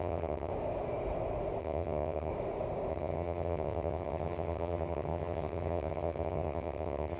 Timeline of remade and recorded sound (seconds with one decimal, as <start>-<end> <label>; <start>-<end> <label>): 0.0-0.5 remade; 0.5-1.6 recorded; 1.6-2.3 remade; 2.3-2.9 recorded; 2.9-7.2 remade